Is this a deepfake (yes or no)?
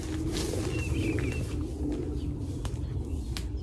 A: no